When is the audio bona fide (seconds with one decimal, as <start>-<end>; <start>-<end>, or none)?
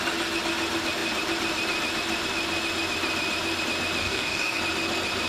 0.0-4.0; 4.6-5.3